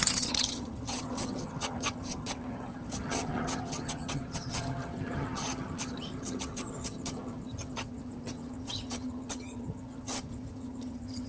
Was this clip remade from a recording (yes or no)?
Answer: yes